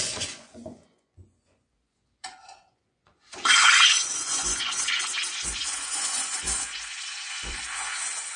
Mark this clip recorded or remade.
remade